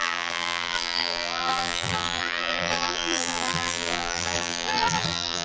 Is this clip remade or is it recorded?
remade